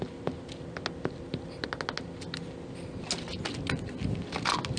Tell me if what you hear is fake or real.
real